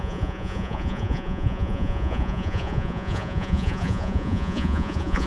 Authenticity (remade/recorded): remade